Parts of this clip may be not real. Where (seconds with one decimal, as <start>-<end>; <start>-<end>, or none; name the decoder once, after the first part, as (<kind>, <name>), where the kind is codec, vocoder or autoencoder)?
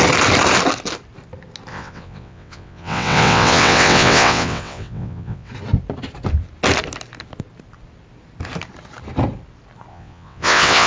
1.7-5.5 (vocoder, WaveNeXt); 9.9-10.9